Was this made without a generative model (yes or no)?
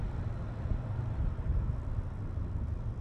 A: yes